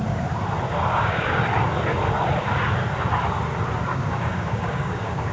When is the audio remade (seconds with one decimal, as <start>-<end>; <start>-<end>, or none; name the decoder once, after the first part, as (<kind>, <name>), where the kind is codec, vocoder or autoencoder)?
0.9-1.4 (codec, DAC); 3.9-5.3